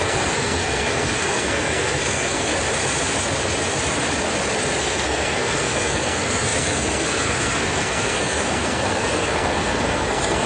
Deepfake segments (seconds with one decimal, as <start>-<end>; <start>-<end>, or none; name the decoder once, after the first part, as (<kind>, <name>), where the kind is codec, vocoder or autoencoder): 0.0-2.5 (codec, SNAC); 4.8-10.5